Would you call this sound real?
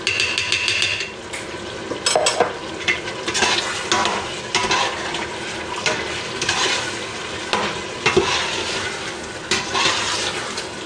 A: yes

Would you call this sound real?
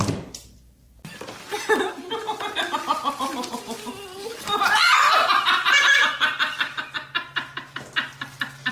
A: yes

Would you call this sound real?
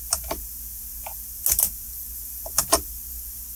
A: yes